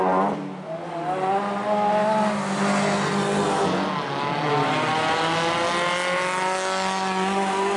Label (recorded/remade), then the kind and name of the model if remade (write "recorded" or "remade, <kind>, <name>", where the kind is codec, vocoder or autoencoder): recorded